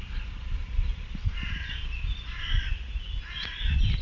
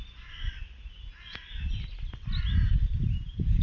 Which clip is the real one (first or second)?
second